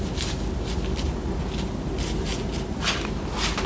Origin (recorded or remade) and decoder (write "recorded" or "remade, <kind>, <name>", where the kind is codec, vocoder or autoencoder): recorded